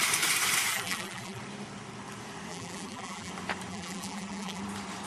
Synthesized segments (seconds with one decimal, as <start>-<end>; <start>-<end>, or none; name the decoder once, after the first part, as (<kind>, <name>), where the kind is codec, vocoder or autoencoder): 0.7-1.4 (vocoder, BigVGAN v2); 2.5-3.3; 3.7-4.6